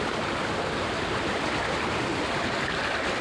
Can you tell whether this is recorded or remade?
recorded